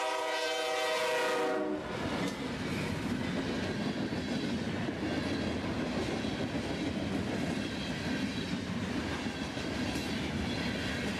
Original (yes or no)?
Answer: yes